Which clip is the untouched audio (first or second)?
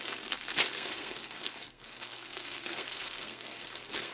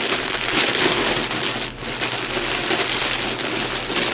second